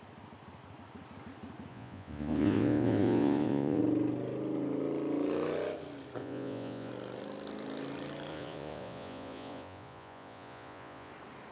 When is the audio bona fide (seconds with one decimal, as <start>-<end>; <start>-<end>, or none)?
0.0-1.7; 3.8-6.2; 6.9-8.3; 11.1-11.5